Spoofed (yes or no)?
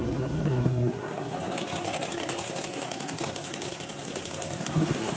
yes